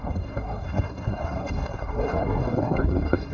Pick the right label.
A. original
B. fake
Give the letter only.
B